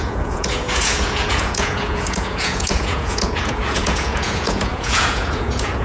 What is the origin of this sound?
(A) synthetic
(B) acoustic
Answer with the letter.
A